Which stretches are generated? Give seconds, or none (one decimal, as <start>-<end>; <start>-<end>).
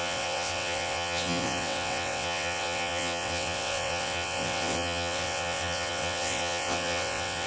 0.0-7.5